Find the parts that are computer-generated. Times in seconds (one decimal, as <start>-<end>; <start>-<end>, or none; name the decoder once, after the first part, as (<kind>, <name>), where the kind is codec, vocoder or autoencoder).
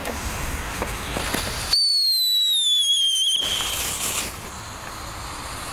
0.0-1.2 (codec, DAC)